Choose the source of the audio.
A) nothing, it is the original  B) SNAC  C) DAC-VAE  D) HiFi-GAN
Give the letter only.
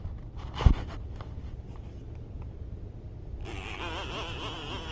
A